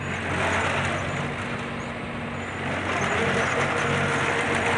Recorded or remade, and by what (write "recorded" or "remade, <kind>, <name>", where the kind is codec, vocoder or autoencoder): recorded